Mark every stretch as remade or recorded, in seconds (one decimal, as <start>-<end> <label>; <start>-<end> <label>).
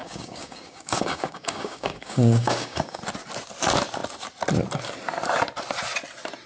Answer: 0.0-3.0 remade; 3.0-6.5 recorded